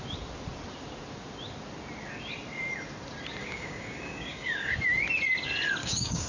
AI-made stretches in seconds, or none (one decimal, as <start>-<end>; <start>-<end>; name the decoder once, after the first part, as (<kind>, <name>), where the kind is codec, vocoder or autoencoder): 3.4-4.7 (codec, DAC); 5.8-6.3